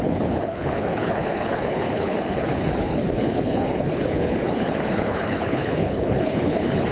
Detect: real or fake fake